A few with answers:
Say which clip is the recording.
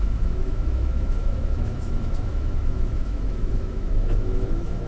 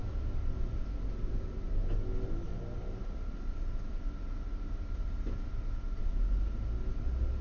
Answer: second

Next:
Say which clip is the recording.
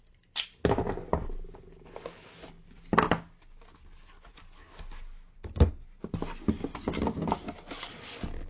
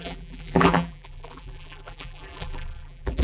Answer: first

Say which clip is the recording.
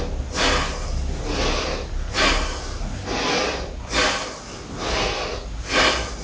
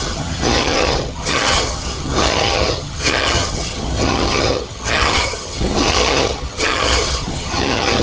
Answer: first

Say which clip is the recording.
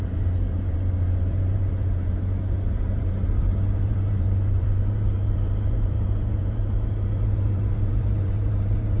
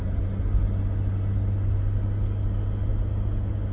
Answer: second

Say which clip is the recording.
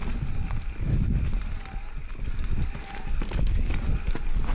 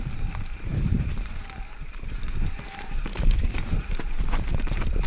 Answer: first